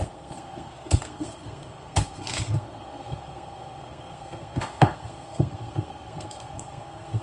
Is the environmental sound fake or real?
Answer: fake